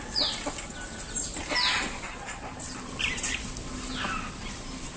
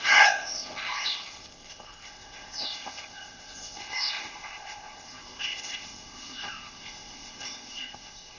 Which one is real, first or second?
first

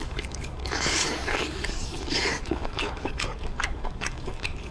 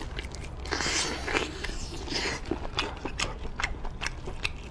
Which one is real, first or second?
second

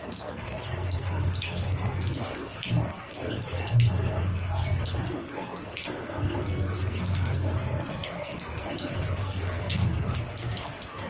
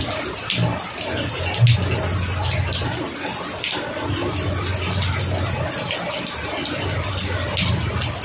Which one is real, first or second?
second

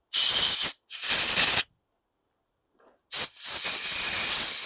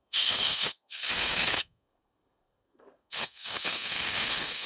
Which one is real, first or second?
first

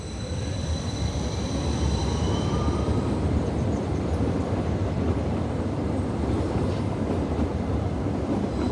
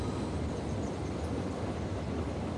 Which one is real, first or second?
second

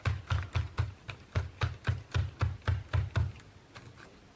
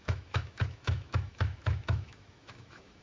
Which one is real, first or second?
first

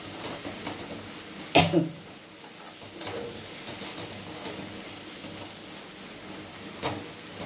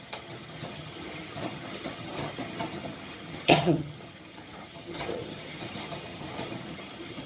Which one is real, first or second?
first